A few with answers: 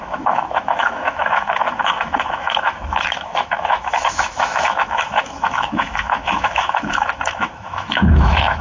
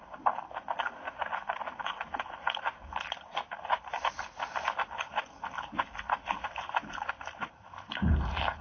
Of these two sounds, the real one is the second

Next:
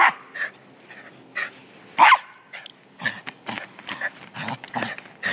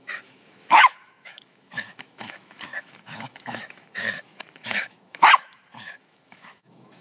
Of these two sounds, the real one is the first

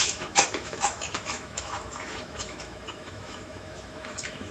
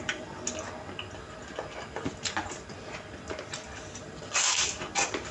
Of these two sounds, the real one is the second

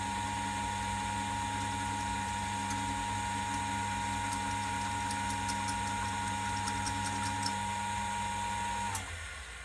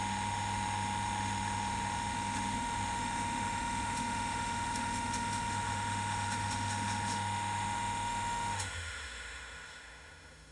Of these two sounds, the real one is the first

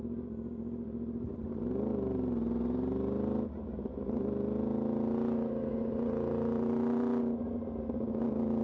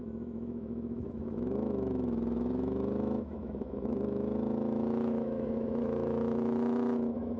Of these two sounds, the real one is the first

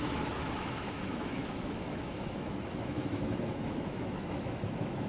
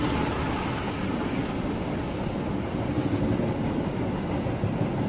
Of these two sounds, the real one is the second